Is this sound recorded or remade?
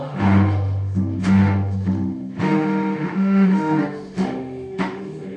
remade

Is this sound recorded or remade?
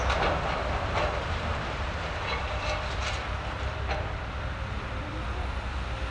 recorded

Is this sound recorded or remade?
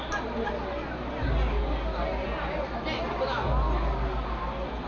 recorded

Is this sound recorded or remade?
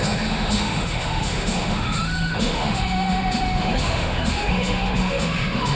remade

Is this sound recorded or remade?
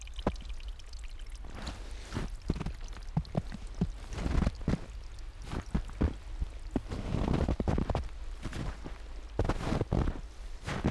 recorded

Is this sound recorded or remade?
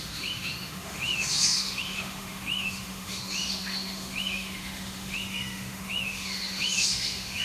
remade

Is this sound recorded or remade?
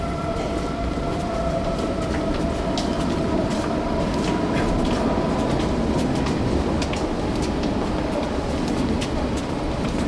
recorded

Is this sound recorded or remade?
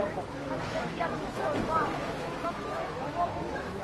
remade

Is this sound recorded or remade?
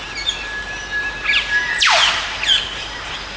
recorded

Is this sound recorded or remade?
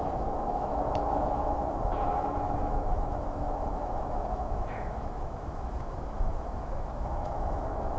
remade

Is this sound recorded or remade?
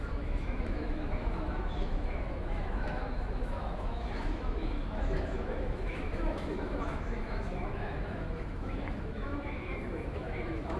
remade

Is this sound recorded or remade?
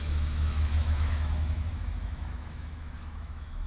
remade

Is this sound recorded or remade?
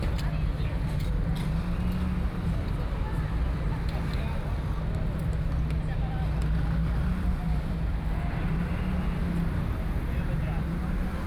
recorded